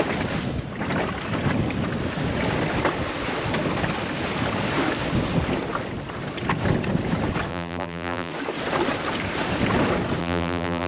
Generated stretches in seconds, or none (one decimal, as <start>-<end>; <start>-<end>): 7.5-8.3; 10.2-10.9